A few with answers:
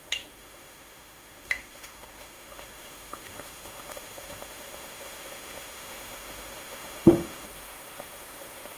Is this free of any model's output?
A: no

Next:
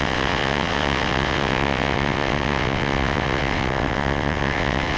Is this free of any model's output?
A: no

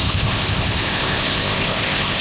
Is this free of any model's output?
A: no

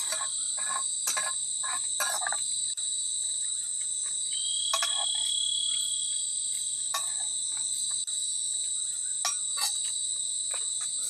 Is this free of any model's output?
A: yes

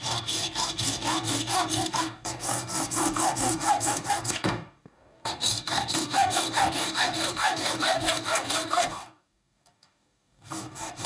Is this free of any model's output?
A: no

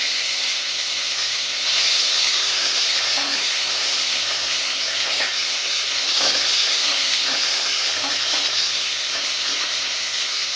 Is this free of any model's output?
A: no